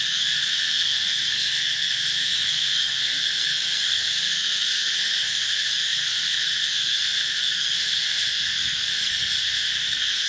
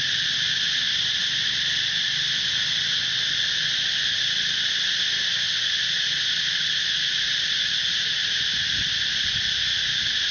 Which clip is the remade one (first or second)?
first